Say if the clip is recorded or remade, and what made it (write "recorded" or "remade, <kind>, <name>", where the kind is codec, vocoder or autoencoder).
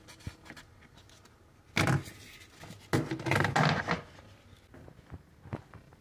recorded